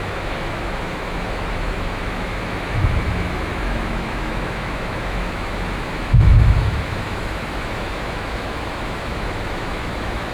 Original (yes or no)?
no